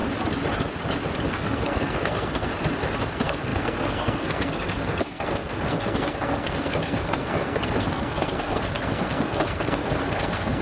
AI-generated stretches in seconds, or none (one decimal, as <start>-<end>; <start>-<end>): 1.3-2.5; 3.0-10.6